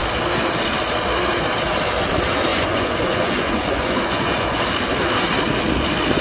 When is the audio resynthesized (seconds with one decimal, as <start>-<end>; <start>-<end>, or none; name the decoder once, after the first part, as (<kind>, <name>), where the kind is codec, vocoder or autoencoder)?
2.5-4.6 (vocoder, Vocos)